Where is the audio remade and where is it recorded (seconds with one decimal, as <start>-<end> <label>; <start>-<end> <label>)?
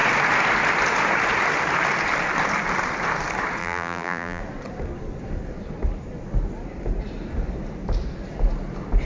0.0-3.6 recorded; 3.6-4.4 remade; 4.4-9.0 recorded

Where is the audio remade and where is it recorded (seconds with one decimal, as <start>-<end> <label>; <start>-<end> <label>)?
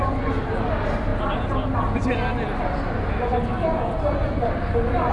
0.0-5.1 recorded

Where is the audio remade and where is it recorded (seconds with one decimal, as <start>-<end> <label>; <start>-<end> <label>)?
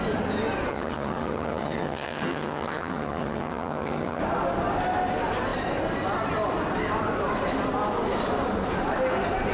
0.0-0.7 recorded; 0.7-4.2 remade; 4.2-9.5 recorded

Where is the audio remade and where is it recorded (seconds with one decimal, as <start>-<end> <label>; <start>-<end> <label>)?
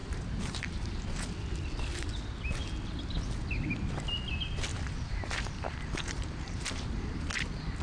0.0-1.0 remade; 1.0-4.7 recorded; 4.7-7.3 remade; 7.3-7.8 recorded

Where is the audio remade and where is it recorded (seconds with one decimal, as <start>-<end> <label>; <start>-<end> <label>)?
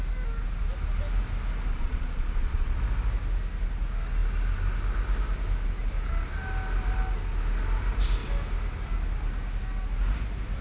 0.0-1.7 recorded; 1.7-2.8 remade; 2.8-10.6 recorded